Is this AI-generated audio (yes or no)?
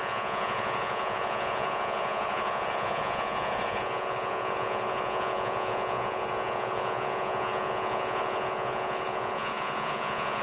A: yes